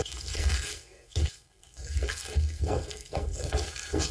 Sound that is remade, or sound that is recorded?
remade